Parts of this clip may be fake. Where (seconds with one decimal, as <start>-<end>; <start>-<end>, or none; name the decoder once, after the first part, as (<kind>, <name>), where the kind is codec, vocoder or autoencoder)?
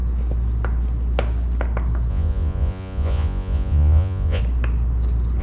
2.1-4.4 (vocoder, Vocos)